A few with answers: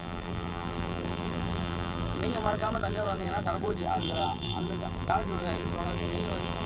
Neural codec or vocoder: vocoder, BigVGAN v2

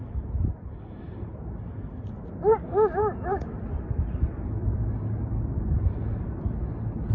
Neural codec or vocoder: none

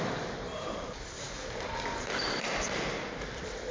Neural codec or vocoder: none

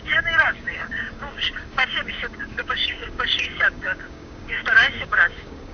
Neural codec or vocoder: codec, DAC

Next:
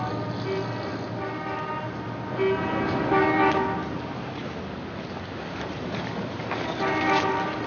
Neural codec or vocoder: none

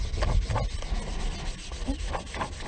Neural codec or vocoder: none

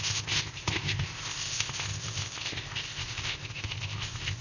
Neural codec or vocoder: codec, ZipCodec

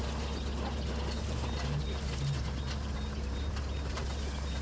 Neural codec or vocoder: none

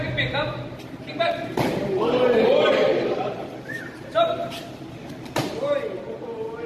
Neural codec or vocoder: vocoder, BigVGAN v2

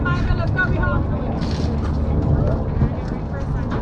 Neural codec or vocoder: none